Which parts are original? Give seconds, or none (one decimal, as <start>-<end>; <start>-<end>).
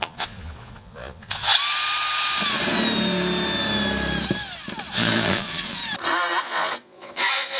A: 1.5-4.9; 5.8-6.4